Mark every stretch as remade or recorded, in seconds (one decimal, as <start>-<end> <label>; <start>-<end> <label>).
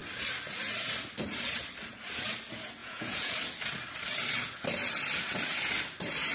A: 0.0-2.8 recorded; 2.8-3.3 remade; 3.3-6.3 recorded